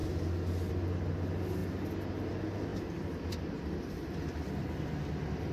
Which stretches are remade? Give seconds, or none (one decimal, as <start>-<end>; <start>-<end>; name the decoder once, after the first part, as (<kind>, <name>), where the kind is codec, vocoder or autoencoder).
2.7-4.3 (vocoder, BigVGAN v2)